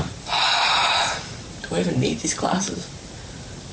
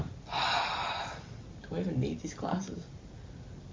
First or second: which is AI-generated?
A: first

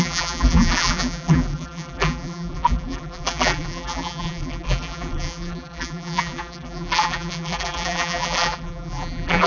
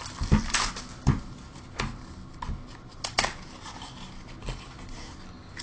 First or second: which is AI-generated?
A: first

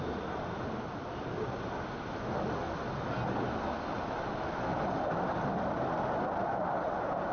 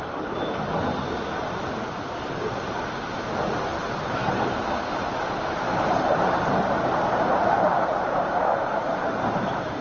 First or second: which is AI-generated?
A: second